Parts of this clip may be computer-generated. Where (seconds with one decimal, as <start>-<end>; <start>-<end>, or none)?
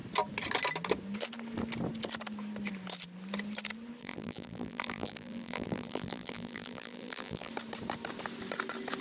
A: 4.0-7.5